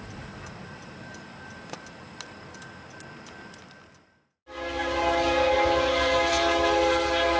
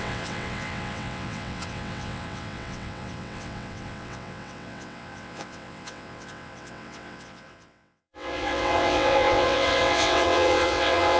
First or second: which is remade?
second